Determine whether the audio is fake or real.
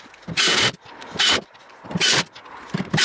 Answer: real